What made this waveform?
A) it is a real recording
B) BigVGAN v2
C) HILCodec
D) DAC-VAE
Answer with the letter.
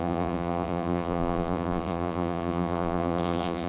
B